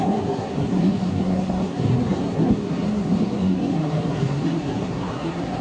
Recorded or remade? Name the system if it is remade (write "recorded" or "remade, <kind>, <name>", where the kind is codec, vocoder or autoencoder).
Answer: remade, codec, SNAC